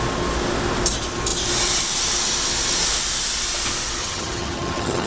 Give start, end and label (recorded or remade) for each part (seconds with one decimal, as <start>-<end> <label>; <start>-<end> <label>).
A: 0.0-4.0 recorded; 4.0-5.1 remade